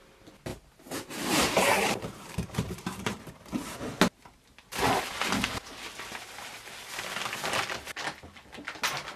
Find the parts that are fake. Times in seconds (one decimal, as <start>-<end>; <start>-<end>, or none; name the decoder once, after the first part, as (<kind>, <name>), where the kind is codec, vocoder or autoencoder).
0.5-3.3 (vocoder, BigVGAN v2)